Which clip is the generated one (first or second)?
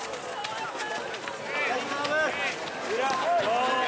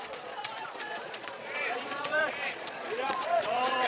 second